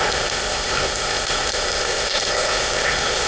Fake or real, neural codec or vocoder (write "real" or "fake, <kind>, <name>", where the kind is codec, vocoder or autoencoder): fake, codec, ZipCodec